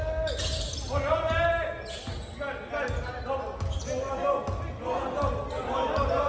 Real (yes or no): yes